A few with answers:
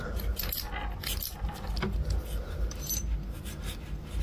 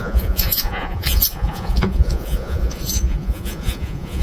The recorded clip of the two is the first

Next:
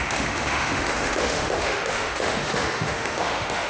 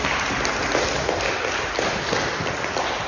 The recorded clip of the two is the second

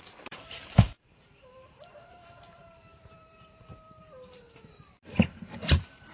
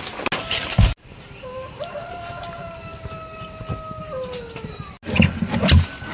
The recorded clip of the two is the second